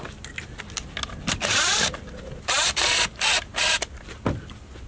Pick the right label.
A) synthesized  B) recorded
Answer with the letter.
B